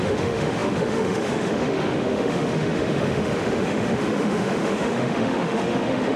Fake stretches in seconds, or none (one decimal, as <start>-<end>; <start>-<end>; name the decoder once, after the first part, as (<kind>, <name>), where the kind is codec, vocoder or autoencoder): 0.0-6.2 (autoencoder, DAC-VAE)

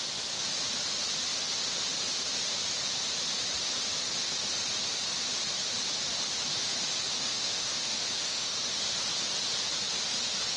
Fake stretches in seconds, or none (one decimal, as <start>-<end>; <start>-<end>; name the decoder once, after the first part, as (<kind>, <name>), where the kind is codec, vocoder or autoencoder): 7.2-8.6 (autoencoder, DAC-VAE)

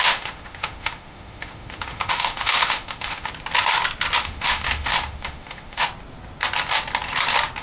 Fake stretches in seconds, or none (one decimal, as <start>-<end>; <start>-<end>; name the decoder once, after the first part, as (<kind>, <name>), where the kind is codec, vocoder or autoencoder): 0.0-3.3 (autoencoder, DAC-VAE); 4.2-5.9

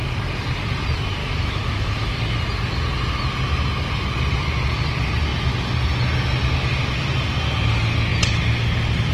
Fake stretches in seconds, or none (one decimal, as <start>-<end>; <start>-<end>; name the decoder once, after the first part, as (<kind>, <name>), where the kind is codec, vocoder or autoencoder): 1.2-2.1 (autoencoder, DAC-VAE)

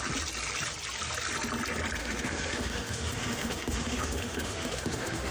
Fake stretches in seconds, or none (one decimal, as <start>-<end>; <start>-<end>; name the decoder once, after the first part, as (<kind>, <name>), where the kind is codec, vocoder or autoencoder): 2.0-5.3 (autoencoder, DAC-VAE)

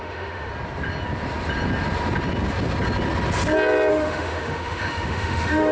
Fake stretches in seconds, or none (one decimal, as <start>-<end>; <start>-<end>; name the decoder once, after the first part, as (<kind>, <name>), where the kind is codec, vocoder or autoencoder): 0.0-0.5 (autoencoder, DAC-VAE); 3.9-5.7

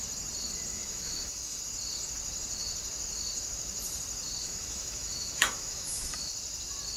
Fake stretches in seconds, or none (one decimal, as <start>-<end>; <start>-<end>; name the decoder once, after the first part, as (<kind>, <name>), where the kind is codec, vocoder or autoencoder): 0.7-1.6 (autoencoder, DAC-VAE); 4.4-6.3